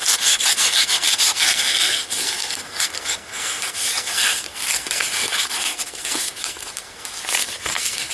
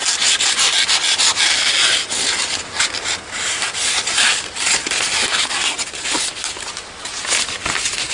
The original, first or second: second